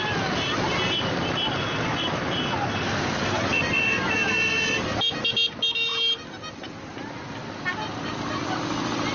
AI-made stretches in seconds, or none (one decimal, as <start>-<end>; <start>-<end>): none